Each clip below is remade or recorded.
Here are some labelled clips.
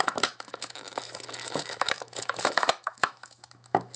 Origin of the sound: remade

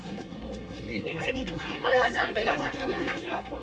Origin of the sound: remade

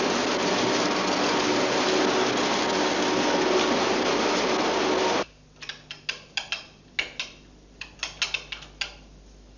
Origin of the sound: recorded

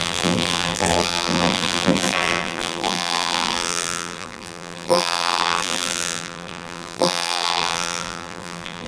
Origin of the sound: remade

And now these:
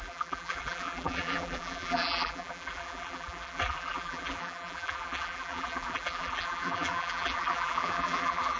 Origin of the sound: remade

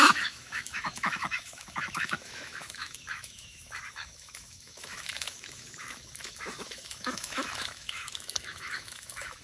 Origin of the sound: remade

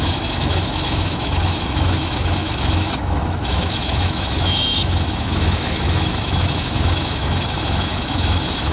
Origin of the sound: remade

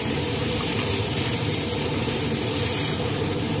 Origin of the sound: remade